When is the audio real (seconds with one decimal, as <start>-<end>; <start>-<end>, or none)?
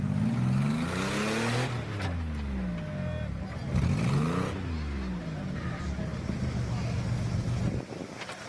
0.0-8.5